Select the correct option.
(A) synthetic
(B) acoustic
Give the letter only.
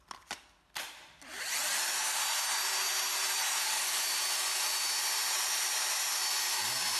B